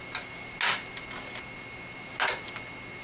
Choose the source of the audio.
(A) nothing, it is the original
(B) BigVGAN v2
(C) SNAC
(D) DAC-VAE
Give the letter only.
A